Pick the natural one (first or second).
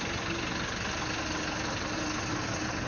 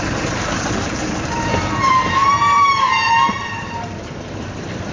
first